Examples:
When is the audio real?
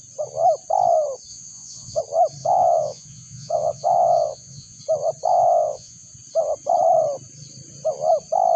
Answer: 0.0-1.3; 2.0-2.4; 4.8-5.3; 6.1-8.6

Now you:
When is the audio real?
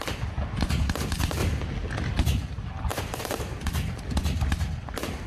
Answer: 0.0-5.3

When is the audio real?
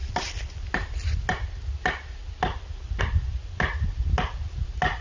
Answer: 0.0-5.0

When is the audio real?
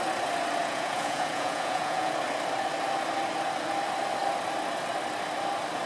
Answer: 0.0-0.6; 2.1-5.9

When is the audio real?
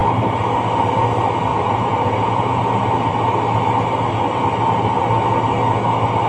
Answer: 0.0-1.5; 2.6-6.3